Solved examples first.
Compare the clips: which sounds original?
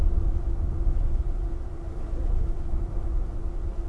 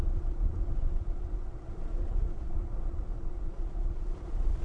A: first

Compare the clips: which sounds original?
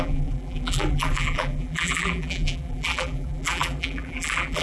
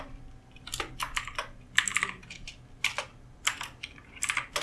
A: second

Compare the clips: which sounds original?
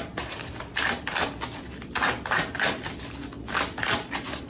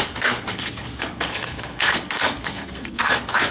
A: first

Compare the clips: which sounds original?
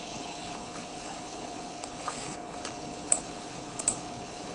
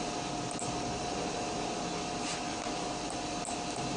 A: second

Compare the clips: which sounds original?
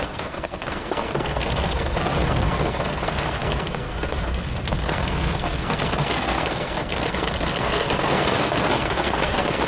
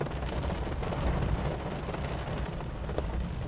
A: second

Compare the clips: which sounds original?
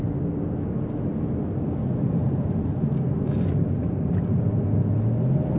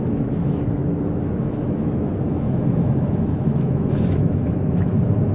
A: first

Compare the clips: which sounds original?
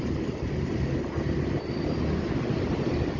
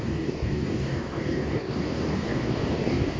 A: first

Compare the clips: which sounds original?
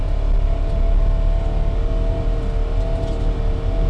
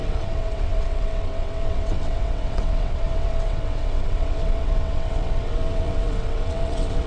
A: first